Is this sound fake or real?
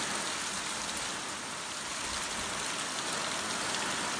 real